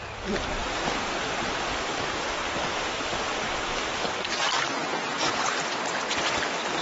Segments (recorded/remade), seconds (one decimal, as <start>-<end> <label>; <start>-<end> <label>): 0.0-6.8 recorded